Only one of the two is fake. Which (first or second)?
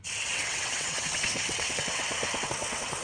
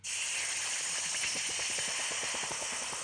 first